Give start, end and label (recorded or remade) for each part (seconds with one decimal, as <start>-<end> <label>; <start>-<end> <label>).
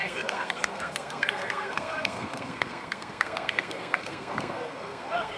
0.0-5.4 remade